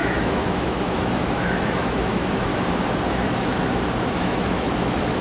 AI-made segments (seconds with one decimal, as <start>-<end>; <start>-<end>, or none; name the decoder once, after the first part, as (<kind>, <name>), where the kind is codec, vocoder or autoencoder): 0.0-2.5 (autoencoder, DAC-VAE); 3.1-3.6; 4.1-5.2